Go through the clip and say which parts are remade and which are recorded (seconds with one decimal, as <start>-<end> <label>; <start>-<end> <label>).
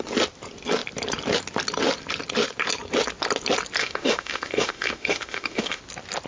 0.0-3.8 recorded; 3.8-5.8 remade; 5.8-6.3 recorded